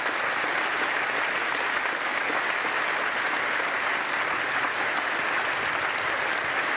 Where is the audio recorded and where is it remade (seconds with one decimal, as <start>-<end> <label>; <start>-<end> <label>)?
0.0-6.8 recorded